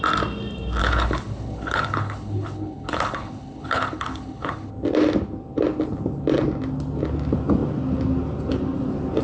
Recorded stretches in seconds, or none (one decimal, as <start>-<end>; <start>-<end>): 0.0-0.8; 4.7-9.2

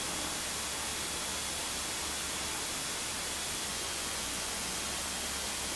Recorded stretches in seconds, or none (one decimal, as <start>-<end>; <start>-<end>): 0.0-3.7; 4.8-5.8

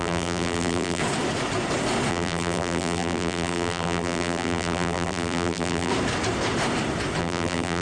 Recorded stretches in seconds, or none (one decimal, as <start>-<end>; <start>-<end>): 1.0-2.1; 5.9-7.2

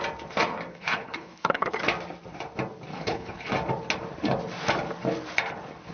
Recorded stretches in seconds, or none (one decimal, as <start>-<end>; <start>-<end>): 0.0-0.7; 1.8-2.9; 3.5-5.9